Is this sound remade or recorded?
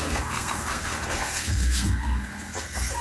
remade